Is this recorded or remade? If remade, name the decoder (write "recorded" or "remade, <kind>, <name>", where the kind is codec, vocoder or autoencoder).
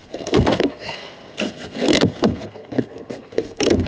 remade, codec, SNAC